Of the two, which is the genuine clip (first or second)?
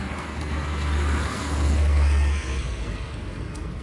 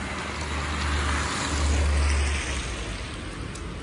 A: second